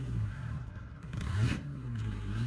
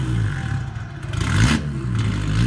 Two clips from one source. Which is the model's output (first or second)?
first